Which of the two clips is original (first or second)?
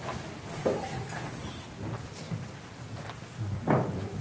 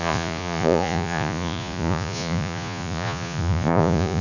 first